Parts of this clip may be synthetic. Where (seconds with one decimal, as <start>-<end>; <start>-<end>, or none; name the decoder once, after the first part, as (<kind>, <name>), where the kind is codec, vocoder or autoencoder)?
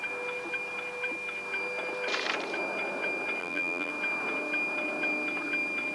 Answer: 3.4-3.9 (vocoder, BigVGAN v2)